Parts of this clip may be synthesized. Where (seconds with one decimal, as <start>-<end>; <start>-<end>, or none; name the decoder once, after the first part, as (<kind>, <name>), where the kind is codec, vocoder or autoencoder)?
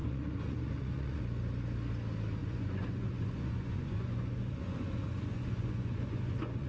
0.0-1.2 (vocoder, Vocos); 2.4-6.7